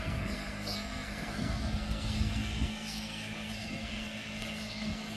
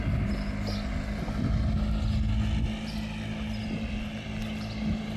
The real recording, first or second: second